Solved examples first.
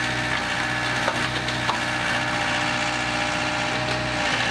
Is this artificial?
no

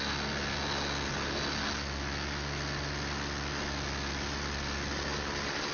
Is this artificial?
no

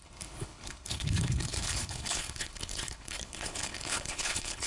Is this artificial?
yes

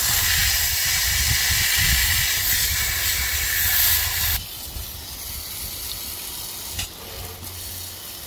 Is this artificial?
no